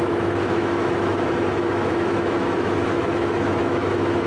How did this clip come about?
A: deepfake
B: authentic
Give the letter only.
A